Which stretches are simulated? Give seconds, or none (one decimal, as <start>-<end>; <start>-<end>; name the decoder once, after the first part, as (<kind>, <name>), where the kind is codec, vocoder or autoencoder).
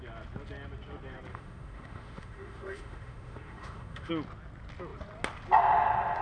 1.3-4.1 (autoencoder, DAC-VAE)